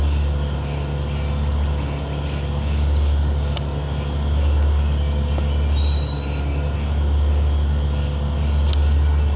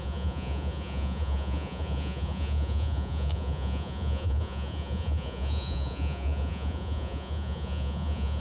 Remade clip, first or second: second